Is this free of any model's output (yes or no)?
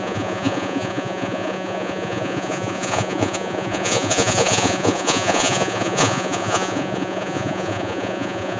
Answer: no